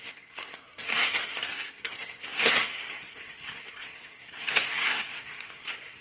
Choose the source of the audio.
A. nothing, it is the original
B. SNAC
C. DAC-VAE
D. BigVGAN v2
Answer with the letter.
B